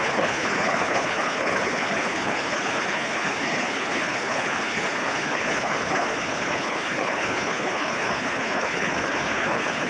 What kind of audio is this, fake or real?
fake